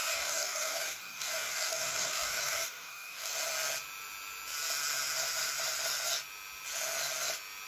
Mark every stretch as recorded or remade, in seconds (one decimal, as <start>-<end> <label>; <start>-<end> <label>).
0.0-3.3 remade; 3.3-7.7 recorded